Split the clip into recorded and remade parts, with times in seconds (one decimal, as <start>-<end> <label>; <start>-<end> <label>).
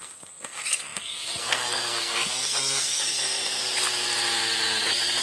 0.0-3.6 remade; 3.6-5.2 recorded